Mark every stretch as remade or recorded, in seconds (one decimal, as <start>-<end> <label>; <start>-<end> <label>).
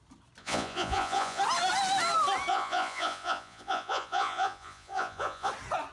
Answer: 0.0-0.4 recorded; 0.4-1.4 remade; 1.4-2.5 recorded; 2.5-5.5 remade; 5.5-5.9 recorded